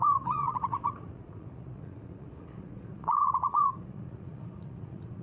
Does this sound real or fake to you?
fake